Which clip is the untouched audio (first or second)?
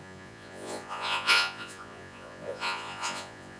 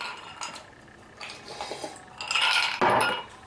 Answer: second